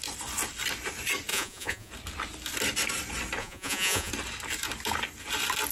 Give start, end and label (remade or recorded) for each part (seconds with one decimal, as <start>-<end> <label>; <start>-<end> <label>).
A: 0.0-1.3 recorded; 1.3-1.9 remade; 1.9-3.4 recorded; 3.4-4.1 remade; 4.1-5.7 recorded